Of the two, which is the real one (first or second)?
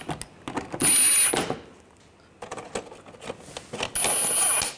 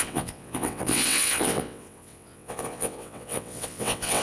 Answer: first